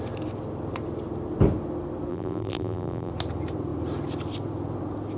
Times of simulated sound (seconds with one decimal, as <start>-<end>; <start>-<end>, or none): 2.1-3.1